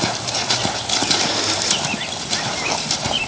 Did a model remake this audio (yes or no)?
no